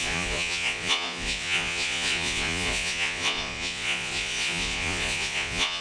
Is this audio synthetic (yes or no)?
yes